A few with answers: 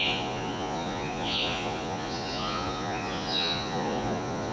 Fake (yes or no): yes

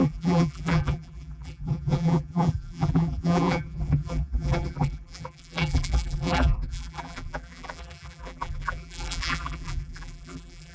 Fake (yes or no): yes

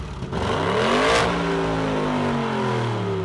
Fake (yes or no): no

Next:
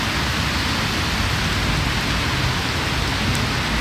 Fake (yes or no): no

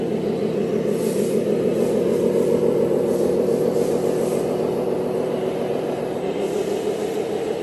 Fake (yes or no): yes